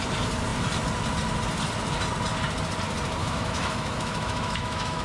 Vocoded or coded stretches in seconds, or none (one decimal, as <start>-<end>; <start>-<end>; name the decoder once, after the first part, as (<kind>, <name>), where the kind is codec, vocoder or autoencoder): 3.2-5.0 (autoencoder, DAC-VAE)